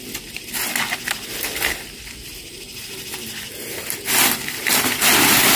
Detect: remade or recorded recorded